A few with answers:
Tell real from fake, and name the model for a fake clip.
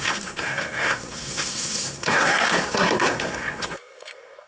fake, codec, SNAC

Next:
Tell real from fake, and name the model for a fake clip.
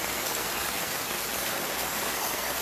fake, codec, SNAC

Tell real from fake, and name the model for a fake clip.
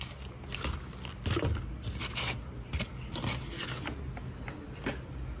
real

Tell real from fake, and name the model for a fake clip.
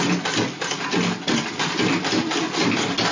real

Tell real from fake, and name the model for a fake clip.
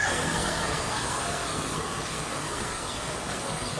fake, codec, SNAC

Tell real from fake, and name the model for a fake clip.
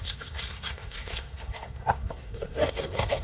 fake, codec, SNAC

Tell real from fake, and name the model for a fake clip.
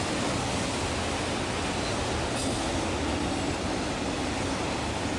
real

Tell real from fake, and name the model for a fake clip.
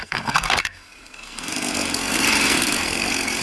fake, codec, SNAC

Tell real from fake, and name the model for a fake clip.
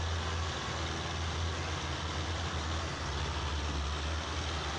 real